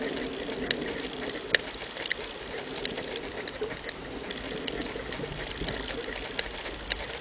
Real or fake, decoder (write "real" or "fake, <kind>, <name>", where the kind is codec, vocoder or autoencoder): real